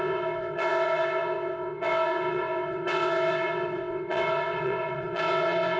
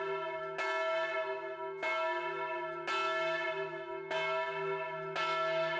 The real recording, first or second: second